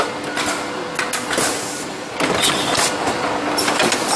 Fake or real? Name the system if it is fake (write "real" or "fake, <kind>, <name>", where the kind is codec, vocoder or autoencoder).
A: real